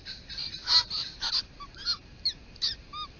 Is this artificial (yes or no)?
no